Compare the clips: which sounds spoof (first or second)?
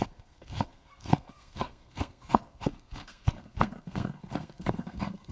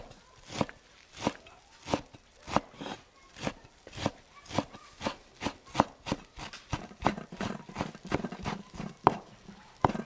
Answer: first